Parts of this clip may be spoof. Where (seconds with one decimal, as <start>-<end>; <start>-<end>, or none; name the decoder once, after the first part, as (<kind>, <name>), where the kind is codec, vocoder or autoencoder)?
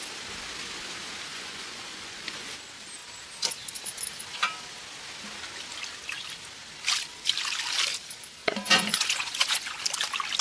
1.3-2.5 (vocoder, Vocos); 8.4-9.8